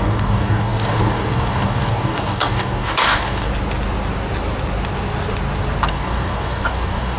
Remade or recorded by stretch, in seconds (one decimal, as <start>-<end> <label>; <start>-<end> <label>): 0.0-3.5 remade; 3.5-5.9 recorded; 5.9-7.2 remade

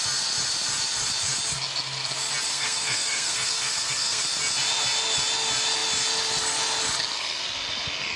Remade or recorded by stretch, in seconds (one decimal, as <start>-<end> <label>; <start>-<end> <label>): 0.0-2.5 recorded; 2.5-4.2 remade; 4.2-8.2 recorded

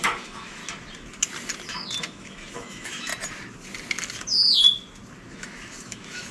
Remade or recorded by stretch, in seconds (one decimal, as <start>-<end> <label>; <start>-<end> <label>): 0.0-0.6 remade; 0.6-2.0 recorded; 2.0-3.1 remade; 3.1-5.3 recorded; 5.3-6.3 remade

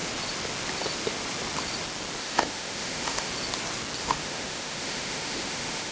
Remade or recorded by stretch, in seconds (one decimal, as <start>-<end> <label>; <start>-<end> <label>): 0.0-2.2 recorded; 2.2-3.3 remade; 3.3-4.0 recorded; 4.0-5.9 remade

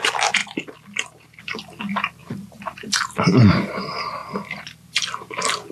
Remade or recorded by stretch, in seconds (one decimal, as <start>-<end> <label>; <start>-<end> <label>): 0.0-2.2 recorded; 2.2-2.9 remade; 2.9-3.3 recorded; 3.3-3.8 remade; 3.8-5.7 recorded